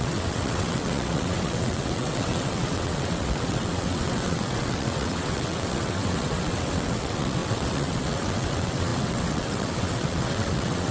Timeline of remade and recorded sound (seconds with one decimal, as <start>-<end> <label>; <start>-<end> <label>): 0.0-10.9 remade